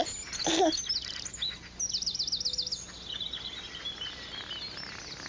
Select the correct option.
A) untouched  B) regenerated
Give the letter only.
A